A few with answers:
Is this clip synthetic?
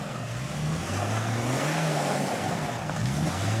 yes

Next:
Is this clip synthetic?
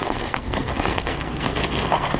yes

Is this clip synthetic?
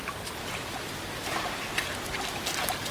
no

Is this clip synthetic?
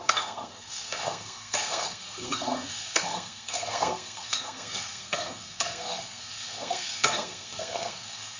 yes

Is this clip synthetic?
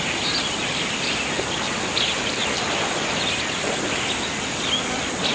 no